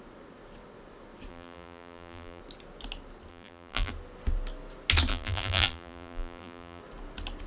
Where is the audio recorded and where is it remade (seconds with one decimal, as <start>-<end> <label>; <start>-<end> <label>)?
0.0-1.3 recorded; 1.3-2.4 remade; 2.4-3.3 recorded; 3.3-3.9 remade; 3.9-5.1 recorded; 5.1-6.8 remade; 6.8-7.5 recorded